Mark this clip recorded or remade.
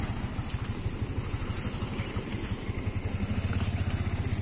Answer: recorded